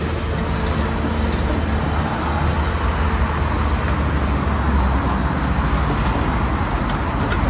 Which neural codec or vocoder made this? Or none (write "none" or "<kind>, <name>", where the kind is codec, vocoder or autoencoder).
none